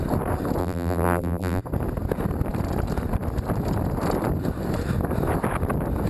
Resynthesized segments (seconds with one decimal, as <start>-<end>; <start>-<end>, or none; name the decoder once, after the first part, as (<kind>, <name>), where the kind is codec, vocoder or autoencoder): 0.6-1.6 (vocoder, BigVGAN v2)